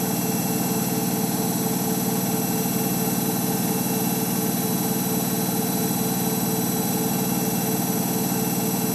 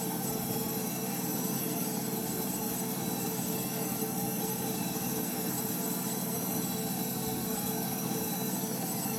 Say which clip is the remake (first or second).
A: second